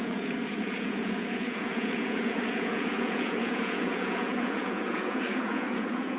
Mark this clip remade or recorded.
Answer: remade